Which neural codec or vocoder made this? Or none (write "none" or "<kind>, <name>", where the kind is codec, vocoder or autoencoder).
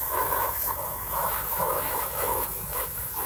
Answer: autoencoder, DAC-VAE